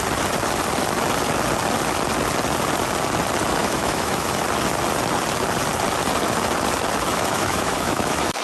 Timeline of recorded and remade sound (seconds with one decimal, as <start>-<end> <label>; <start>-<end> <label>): 0.0-3.6 recorded; 3.6-4.4 remade; 4.4-7.1 recorded; 7.1-8.4 remade